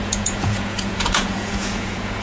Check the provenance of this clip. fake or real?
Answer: fake